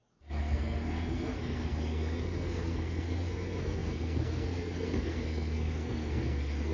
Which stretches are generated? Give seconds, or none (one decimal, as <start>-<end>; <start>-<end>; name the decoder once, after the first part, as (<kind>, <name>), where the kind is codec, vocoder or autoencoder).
0.0-6.7 (codec, SNAC)